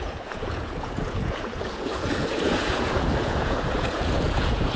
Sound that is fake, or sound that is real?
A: fake